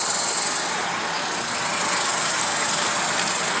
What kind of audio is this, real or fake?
real